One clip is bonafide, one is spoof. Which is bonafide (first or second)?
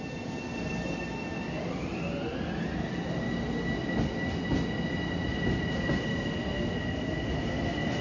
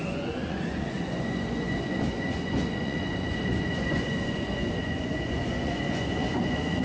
first